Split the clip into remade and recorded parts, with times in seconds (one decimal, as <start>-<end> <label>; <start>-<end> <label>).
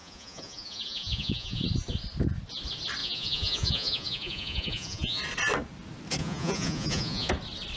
0.0-1.6 remade; 1.6-3.0 recorded; 3.0-5.2 remade; 5.2-6.2 recorded; 6.2-7.3 remade; 7.3-7.8 recorded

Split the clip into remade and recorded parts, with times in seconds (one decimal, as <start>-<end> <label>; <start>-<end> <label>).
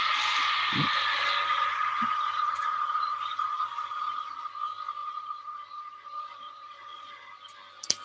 0.0-1.5 recorded; 1.5-4.5 remade; 4.5-5.0 recorded; 5.0-7.3 remade; 7.3-8.0 recorded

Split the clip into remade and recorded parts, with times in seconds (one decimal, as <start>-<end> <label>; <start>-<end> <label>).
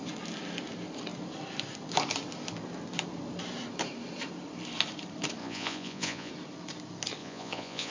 0.0-5.4 recorded; 5.4-6.3 remade; 6.3-7.2 recorded; 7.2-7.9 remade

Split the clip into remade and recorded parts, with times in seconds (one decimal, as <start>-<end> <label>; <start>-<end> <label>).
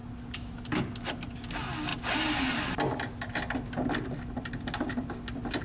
0.0-5.6 recorded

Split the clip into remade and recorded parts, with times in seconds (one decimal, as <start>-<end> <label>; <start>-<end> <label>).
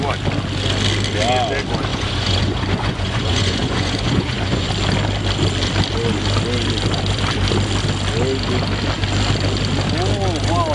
0.0-1.9 recorded; 1.9-4.7 remade; 4.7-10.7 recorded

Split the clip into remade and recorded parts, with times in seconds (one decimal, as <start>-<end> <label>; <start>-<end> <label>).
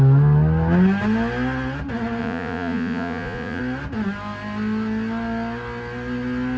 0.0-2.2 recorded; 2.2-3.6 remade; 3.6-6.6 recorded